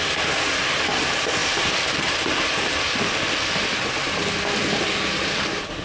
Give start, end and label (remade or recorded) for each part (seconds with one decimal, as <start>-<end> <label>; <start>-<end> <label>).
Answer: 0.0-5.8 recorded